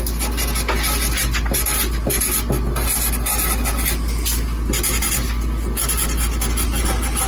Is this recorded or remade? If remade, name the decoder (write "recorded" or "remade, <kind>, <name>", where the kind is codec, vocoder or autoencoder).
recorded